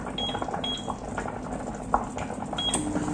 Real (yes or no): yes